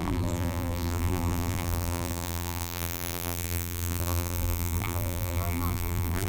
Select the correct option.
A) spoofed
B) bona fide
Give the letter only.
A